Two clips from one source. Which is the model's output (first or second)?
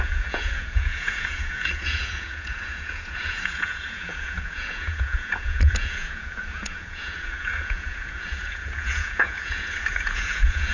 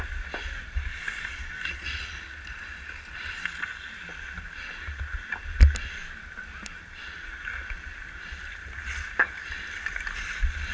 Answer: first